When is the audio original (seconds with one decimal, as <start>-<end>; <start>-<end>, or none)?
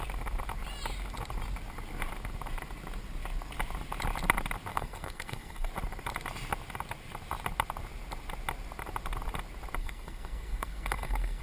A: 0.0-4.7; 5.7-9.8